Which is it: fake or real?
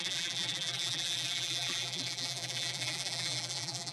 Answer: fake